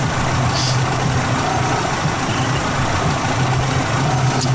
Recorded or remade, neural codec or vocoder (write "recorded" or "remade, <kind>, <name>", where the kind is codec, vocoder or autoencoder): recorded